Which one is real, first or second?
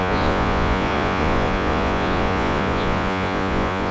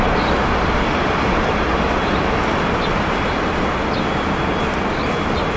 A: second